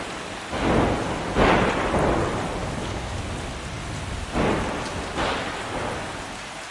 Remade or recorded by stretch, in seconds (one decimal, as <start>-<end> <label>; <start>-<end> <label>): 0.0-2.6 recorded; 2.6-3.3 remade; 3.3-6.7 recorded